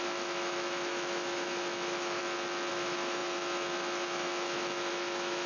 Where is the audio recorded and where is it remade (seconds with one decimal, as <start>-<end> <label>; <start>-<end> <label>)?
0.0-2.2 remade; 2.2-2.7 recorded; 2.7-5.5 remade

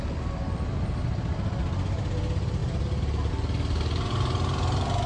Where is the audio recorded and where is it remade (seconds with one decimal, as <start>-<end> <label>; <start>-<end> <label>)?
0.0-5.1 recorded

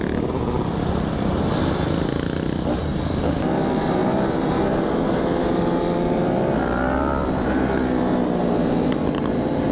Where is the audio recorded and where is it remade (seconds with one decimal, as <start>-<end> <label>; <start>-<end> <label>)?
0.0-4.0 recorded; 4.0-5.8 remade; 5.8-9.7 recorded

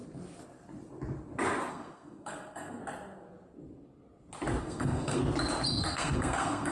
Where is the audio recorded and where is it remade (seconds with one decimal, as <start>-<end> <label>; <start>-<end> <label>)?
0.0-1.7 recorded; 1.7-2.8 remade; 2.8-4.6 recorded; 4.6-5.2 remade; 5.2-5.8 recorded; 5.8-6.7 remade

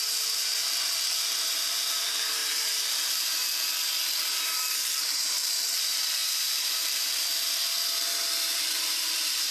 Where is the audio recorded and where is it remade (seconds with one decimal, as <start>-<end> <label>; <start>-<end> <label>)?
0.0-0.5 remade; 0.5-1.1 recorded; 1.1-3.4 remade; 3.4-4.3 recorded; 4.3-9.5 remade

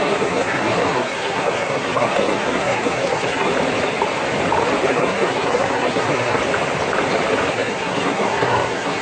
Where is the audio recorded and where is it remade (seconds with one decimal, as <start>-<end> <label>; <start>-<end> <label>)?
0.0-3.5 remade; 3.5-4.9 recorded; 4.9-6.4 remade; 6.4-7.5 recorded; 7.5-9.0 remade